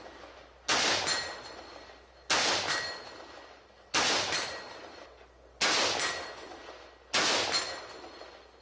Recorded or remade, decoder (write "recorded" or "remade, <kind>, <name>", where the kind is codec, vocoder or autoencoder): recorded